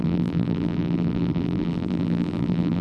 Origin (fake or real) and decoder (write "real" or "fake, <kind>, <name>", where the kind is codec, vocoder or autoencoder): fake, vocoder, BigVGAN v2